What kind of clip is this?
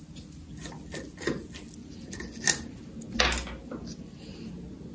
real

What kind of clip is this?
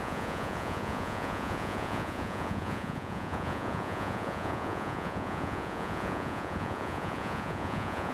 fake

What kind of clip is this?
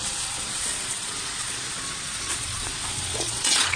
fake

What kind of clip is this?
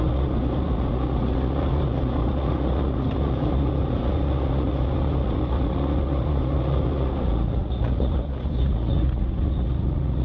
fake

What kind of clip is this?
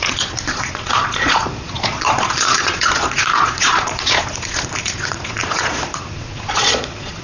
fake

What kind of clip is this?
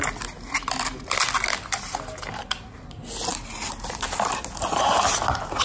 real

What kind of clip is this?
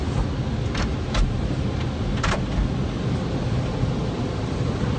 real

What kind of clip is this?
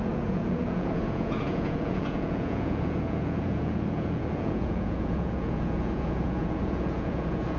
fake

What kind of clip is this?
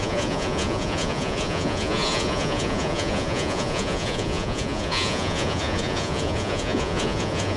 fake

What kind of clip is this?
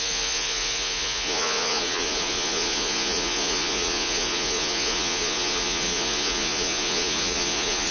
fake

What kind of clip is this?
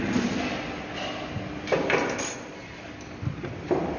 real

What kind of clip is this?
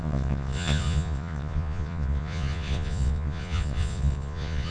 fake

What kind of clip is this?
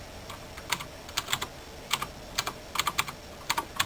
real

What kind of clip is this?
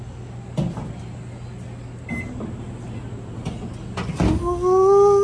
real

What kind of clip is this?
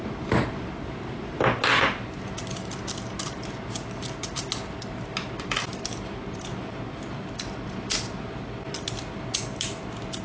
real